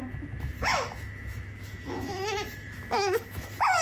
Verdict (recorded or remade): remade